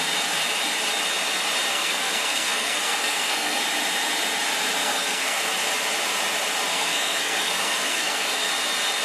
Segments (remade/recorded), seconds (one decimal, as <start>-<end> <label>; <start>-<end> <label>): 0.0-1.7 recorded; 1.7-3.6 remade; 3.6-4.8 recorded; 4.8-5.4 remade; 5.4-6.7 recorded; 6.7-8.5 remade; 8.5-9.0 recorded